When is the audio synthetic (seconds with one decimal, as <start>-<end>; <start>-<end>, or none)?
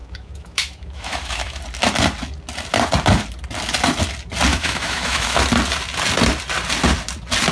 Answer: 0.0-1.6; 4.5-5.4